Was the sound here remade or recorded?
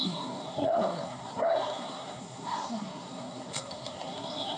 remade